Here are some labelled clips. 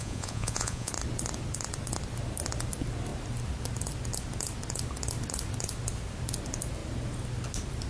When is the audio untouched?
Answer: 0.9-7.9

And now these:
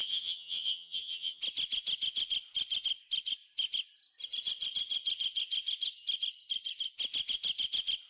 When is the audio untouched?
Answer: 1.4-8.1

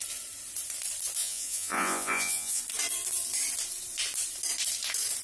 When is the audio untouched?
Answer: 0.0-1.2; 2.6-5.2

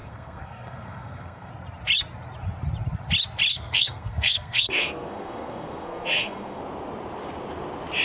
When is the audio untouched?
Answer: 1.5-3.5; 6.6-8.0

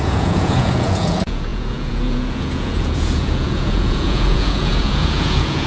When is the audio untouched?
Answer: none